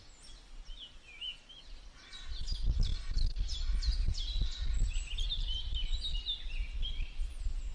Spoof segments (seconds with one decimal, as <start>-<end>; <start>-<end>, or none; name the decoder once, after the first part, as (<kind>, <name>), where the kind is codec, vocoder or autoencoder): none